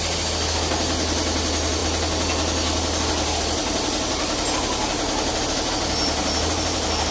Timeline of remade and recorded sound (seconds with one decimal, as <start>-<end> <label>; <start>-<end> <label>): 0.0-7.1 recorded